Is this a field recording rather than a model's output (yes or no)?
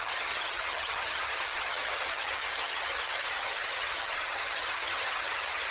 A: no